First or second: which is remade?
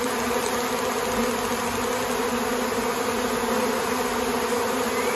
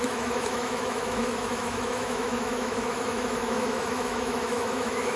second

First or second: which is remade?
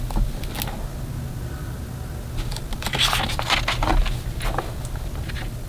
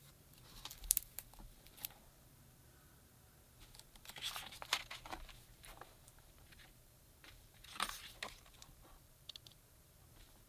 second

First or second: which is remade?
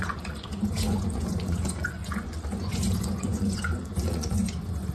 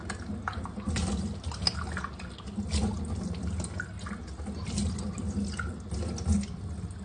first